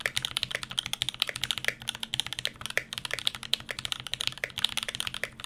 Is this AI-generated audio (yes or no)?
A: no